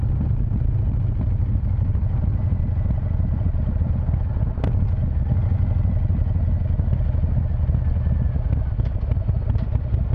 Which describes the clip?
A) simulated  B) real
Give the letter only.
B